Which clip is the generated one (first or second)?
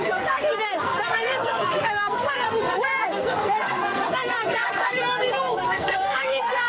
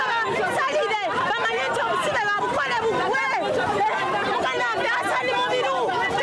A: first